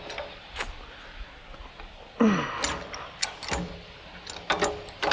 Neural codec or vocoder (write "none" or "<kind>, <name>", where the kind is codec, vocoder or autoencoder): none